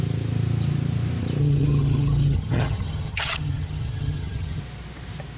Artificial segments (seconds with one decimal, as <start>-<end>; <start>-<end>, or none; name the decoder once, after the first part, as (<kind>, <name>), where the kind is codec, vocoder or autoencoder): 1.4-4.6 (vocoder, HiFi-GAN)